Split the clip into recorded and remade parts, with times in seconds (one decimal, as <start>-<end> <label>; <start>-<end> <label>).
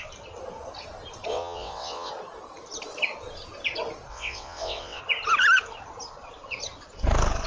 0.0-1.3 recorded; 1.3-2.1 remade; 2.1-4.1 recorded; 4.1-5.0 remade; 5.0-7.5 recorded